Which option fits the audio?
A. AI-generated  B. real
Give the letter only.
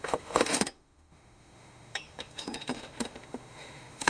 A